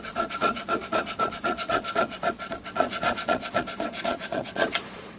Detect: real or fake fake